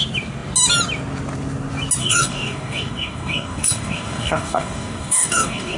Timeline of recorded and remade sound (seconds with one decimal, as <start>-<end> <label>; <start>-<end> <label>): 0.0-2.0 recorded; 2.0-5.8 remade